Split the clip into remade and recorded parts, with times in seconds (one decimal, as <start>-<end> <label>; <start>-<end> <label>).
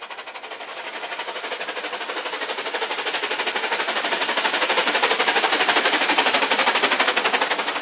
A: 0.0-4.8 recorded; 4.8-6.8 remade; 6.8-7.8 recorded